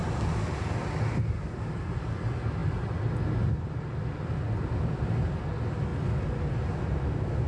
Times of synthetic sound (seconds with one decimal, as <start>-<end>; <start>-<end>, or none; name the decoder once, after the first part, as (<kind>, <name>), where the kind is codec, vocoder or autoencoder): none